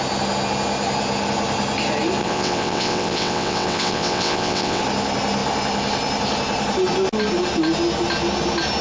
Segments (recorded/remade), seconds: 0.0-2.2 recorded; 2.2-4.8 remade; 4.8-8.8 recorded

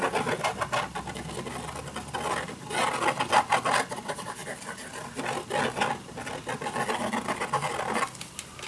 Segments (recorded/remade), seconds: 0.0-8.7 recorded

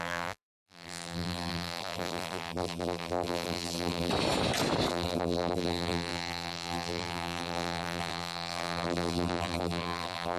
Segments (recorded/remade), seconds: 0.0-4.1 remade; 4.1-4.9 recorded; 4.9-10.4 remade

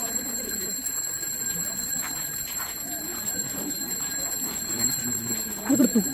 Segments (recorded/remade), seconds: 0.0-6.1 remade

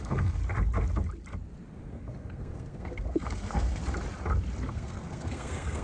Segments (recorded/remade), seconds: 0.0-0.4 remade; 0.4-1.9 recorded; 1.9-3.8 remade; 3.8-4.7 recorded; 4.7-5.8 remade

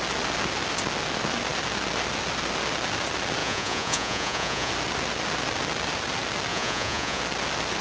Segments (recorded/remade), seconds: 0.0-3.4 recorded; 3.4-4.7 remade; 4.7-6.5 recorded; 6.5-7.2 remade; 7.2-7.8 recorded